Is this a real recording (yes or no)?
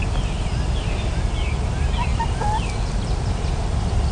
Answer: yes